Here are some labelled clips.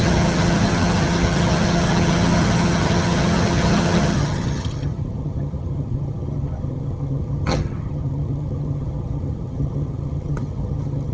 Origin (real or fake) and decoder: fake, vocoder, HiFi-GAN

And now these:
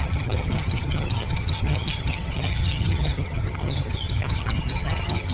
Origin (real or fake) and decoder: fake, vocoder, HiFi-GAN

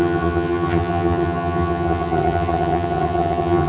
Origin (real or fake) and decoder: fake, vocoder, HiFi-GAN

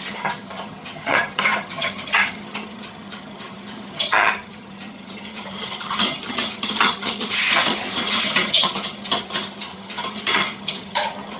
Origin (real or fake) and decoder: fake, vocoder, HiFi-GAN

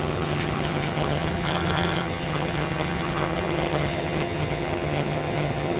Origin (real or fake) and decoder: fake, vocoder, HiFi-GAN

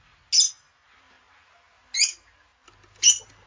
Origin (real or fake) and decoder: real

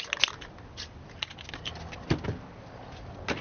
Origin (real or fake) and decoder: real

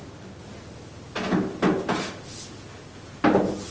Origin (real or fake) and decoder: real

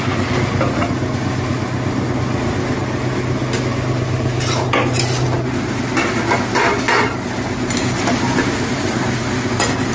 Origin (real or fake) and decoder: real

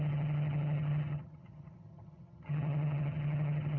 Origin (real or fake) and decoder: fake, vocoder, HiFi-GAN